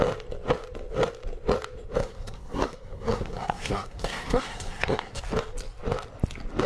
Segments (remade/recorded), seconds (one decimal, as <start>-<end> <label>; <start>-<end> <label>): 0.0-2.0 recorded; 2.0-5.2 remade; 5.2-6.7 recorded